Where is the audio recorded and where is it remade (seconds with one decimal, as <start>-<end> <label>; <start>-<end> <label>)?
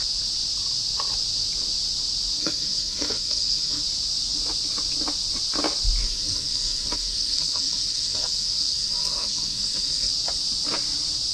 0.0-2.4 recorded; 2.4-3.8 remade; 3.8-6.0 recorded; 6.0-10.1 remade; 10.1-11.3 recorded